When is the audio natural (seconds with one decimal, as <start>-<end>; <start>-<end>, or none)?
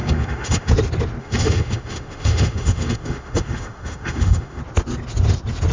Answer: 0.7-1.2; 4.6-5.7